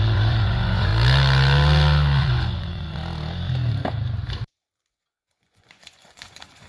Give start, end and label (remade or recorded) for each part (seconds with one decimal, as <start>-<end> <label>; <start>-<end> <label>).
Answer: 0.0-0.9 remade; 0.9-2.2 recorded; 2.2-3.0 remade; 3.0-4.9 recorded; 4.9-6.7 remade